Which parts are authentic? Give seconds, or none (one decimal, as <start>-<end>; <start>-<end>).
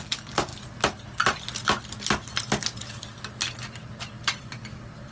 0.5-3.6